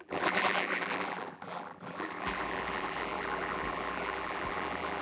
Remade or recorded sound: remade